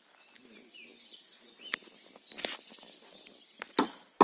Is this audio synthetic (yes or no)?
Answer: no